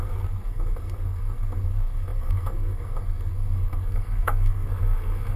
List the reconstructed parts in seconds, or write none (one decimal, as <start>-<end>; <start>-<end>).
0.0-5.4